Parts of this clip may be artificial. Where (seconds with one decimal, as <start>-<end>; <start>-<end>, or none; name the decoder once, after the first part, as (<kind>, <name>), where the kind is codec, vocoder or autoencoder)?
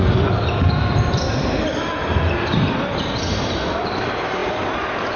2.1-3.6 (vocoder, BigVGAN v2)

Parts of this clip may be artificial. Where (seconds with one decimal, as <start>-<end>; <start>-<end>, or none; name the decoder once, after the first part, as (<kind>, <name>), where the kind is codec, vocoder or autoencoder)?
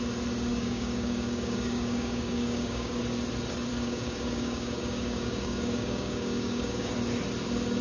0.5-3.0 (codec, DAC); 3.7-6.9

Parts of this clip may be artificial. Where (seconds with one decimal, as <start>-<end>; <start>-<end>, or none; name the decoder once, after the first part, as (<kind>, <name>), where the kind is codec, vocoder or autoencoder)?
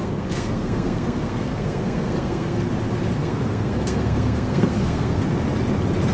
0.0-2.6 (codec, SNAC); 3.2-5.3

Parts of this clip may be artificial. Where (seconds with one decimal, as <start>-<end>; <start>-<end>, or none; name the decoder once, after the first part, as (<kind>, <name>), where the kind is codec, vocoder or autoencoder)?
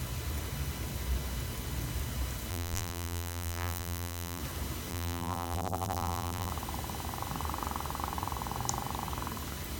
2.5-4.4 (vocoder, BigVGAN v2); 4.9-6.5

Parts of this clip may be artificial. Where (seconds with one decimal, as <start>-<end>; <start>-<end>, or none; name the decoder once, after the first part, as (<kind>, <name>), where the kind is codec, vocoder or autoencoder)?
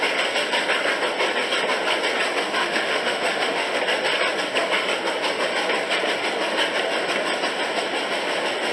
2.6-3.8 (autoencoder, DAC-VAE)